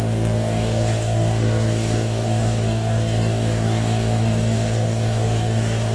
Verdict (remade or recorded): remade